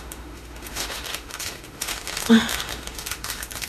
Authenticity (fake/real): fake